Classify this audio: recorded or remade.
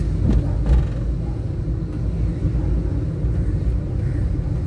recorded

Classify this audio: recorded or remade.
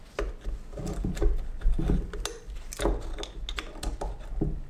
recorded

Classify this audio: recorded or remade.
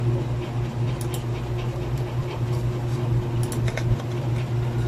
recorded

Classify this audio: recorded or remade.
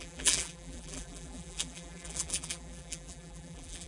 remade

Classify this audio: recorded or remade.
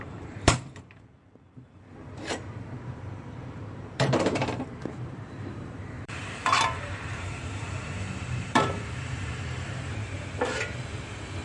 remade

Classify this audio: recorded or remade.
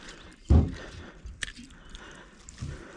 recorded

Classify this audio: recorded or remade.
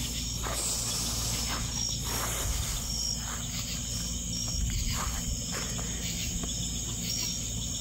recorded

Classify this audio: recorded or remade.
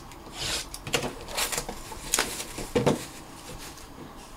remade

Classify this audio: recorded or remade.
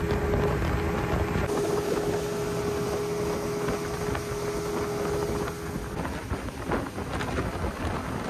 recorded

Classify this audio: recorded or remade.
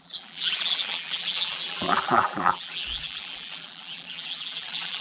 remade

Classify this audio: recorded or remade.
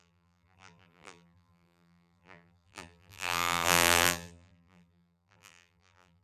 remade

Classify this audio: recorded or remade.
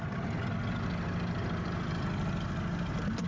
recorded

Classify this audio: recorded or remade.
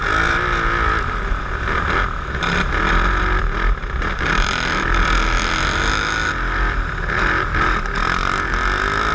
recorded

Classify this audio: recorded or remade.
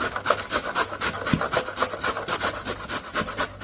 recorded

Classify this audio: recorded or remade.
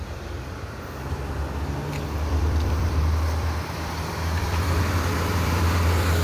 remade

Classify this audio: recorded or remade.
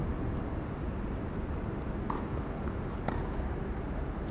recorded